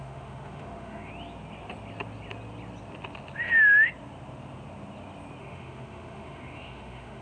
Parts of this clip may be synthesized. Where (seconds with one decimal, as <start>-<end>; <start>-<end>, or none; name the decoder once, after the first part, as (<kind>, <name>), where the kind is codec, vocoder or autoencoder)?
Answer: 0.0-1.1 (autoencoder, DAC-VAE); 5.4-7.2